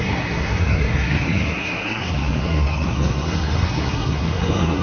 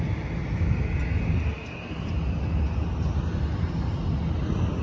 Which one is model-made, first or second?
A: first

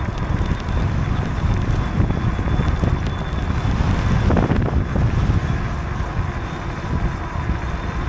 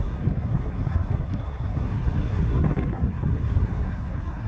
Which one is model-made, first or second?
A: second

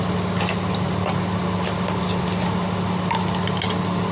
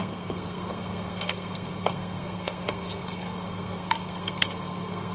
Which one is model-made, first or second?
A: second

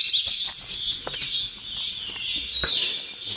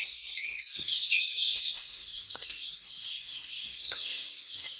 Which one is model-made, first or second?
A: second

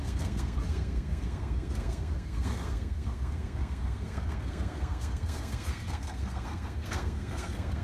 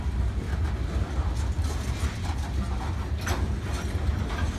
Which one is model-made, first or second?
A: first